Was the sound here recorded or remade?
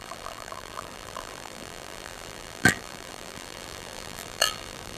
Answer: remade